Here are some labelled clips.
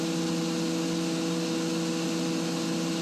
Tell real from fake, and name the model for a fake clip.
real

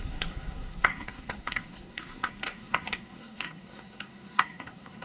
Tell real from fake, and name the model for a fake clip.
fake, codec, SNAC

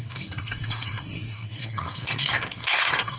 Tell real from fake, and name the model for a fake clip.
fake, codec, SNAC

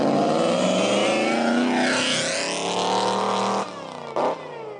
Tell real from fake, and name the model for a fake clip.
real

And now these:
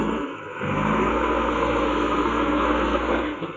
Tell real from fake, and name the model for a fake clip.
fake, codec, SNAC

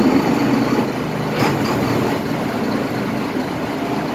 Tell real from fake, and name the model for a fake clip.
real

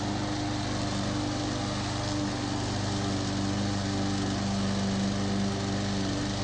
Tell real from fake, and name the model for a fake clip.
real